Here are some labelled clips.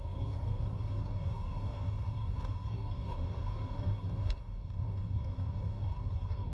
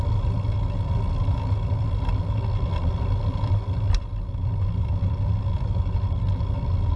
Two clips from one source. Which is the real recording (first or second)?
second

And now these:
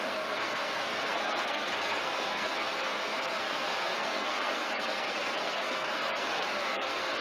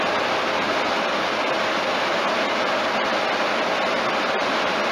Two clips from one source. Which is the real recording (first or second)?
second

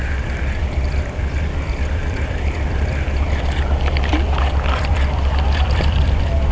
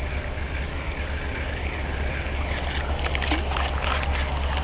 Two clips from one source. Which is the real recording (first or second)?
second